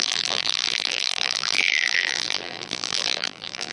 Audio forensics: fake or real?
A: fake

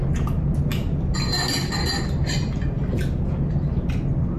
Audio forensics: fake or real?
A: real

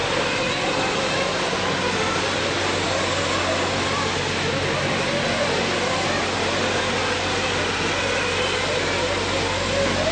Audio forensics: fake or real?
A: real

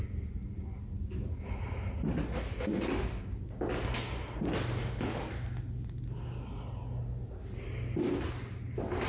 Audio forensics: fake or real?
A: real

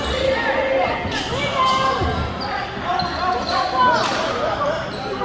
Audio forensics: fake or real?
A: real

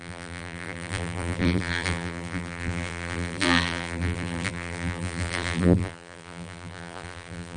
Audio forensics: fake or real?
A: fake